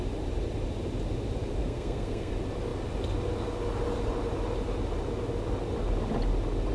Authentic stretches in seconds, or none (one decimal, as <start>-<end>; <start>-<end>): 0.0-1.6; 2.3-6.7